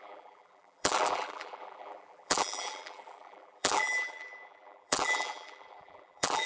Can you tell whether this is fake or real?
fake